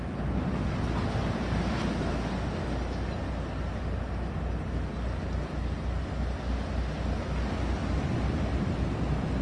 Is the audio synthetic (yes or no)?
no